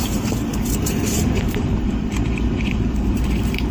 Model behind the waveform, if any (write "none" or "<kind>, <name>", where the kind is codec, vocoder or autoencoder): vocoder, BigVGAN v2